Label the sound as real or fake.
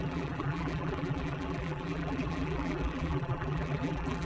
fake